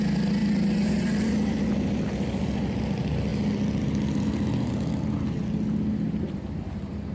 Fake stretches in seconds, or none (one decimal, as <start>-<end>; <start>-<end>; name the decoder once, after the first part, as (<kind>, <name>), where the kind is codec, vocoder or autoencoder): 0.4-1.7 (vocoder, BigVGAN v2)